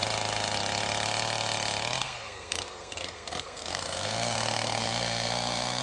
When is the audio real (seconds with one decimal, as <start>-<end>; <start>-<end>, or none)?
0.0-2.0